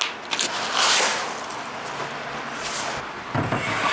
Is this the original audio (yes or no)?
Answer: yes